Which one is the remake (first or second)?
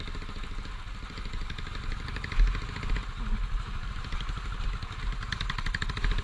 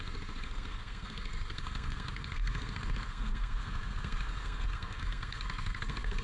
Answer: second